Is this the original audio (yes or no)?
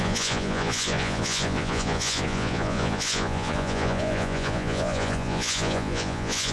no